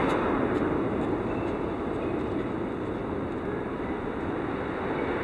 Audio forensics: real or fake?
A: real